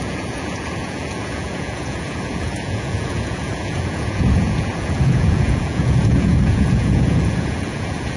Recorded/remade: remade